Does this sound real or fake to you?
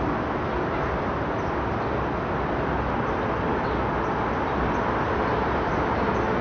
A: real